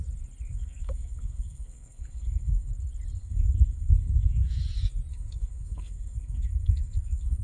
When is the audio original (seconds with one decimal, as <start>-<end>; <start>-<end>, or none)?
0.0-0.5; 2.7-3.2; 4.6-5.1